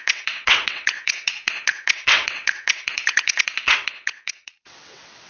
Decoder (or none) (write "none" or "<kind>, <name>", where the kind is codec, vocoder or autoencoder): vocoder, WaveNeXt